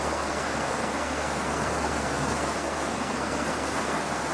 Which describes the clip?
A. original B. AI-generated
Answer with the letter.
B